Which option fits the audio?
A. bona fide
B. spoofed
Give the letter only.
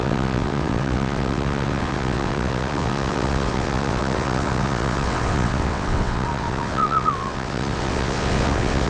B